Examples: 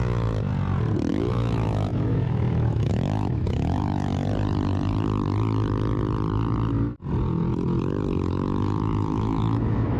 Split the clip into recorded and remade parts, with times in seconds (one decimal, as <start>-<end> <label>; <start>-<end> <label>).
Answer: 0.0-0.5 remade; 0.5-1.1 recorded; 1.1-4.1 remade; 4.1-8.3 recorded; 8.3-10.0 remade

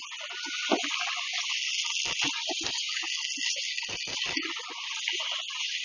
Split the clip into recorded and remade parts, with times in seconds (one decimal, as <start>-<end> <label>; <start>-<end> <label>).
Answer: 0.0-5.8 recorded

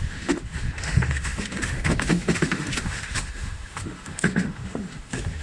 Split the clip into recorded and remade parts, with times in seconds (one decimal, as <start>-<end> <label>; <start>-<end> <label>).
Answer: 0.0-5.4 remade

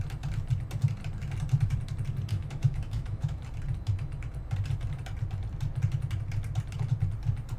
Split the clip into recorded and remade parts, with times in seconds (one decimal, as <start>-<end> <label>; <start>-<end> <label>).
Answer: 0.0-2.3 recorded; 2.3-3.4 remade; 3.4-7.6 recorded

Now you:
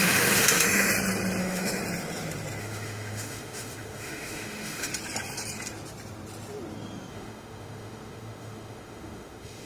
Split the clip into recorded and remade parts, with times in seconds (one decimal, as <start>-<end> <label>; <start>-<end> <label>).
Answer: 0.0-0.9 remade; 0.9-1.4 recorded; 1.4-1.8 remade; 1.8-2.6 recorded; 2.6-4.9 remade; 4.9-7.1 recorded; 7.1-9.7 remade